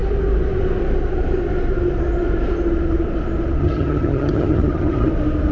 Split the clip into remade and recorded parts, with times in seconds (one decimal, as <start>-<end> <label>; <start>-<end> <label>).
0.0-3.6 recorded; 3.6-5.1 remade; 5.1-5.5 recorded